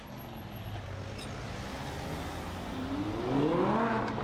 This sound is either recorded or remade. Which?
recorded